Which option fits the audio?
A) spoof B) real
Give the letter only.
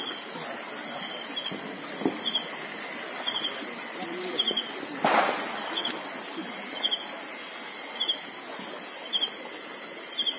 B